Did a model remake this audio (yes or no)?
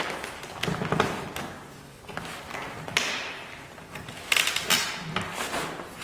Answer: no